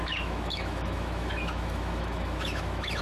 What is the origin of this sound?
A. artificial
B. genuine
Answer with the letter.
A